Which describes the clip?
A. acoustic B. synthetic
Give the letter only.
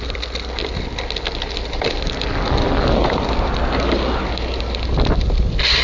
A